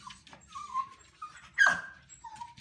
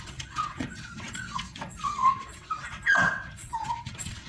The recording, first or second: first